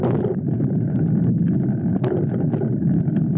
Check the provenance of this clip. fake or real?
real